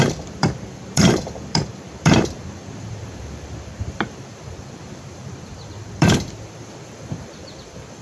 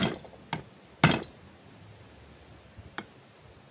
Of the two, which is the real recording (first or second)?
second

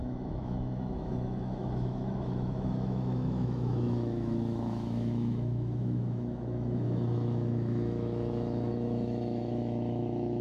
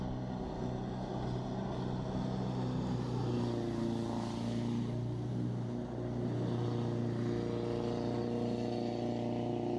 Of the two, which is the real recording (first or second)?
second